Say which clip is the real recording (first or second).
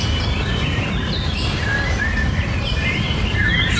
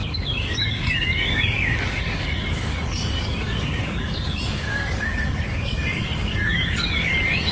first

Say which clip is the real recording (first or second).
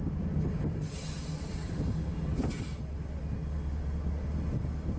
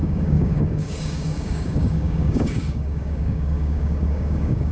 first